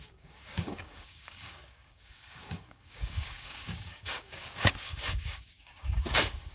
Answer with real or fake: fake